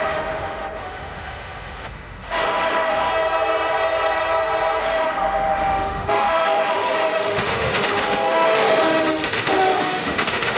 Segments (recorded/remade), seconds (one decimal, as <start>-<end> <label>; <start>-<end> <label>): 0.0-3.1 remade; 3.1-4.8 recorded; 4.8-10.6 remade

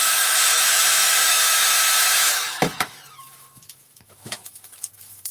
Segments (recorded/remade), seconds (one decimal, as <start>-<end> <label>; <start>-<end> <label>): 0.0-5.3 remade